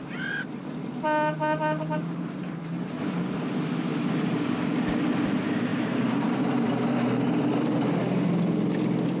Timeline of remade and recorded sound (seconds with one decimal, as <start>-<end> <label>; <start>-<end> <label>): 0.0-3.9 recorded; 3.9-4.8 remade; 4.8-5.7 recorded; 5.7-6.7 remade; 6.7-9.2 recorded